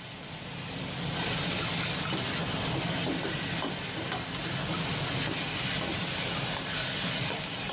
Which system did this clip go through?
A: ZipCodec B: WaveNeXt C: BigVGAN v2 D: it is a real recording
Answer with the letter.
D